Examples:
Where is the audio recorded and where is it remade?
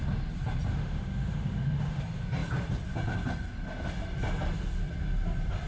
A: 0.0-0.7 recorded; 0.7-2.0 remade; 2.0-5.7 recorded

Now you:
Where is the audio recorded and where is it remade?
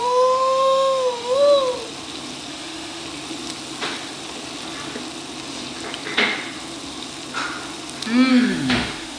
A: 0.0-1.4 remade; 1.4-2.5 recorded; 2.5-3.0 remade; 3.0-8.3 recorded; 8.3-9.2 remade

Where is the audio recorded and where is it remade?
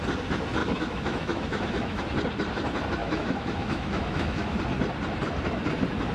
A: 0.0-0.6 recorded; 0.6-2.0 remade; 2.0-3.0 recorded; 3.0-4.6 remade; 4.6-6.1 recorded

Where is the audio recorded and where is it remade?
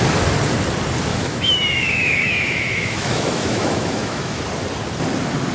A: 0.0-1.1 recorded; 1.1-4.4 remade; 4.4-5.5 recorded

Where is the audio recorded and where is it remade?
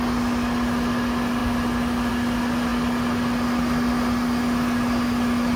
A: 0.0-5.6 recorded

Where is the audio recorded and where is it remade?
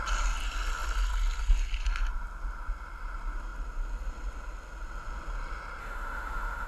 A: 0.0-5.8 recorded; 5.8-6.7 remade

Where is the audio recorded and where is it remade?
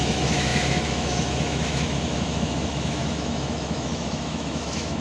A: 0.0-5.0 remade